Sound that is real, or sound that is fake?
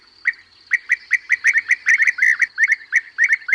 real